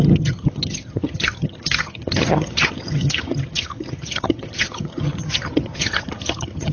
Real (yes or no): no